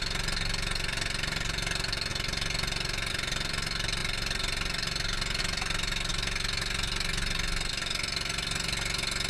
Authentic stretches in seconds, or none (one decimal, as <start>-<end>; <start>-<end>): 0.0-4.0; 5.4-9.3